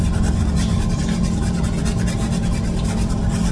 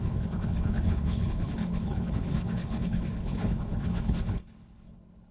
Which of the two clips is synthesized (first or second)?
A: second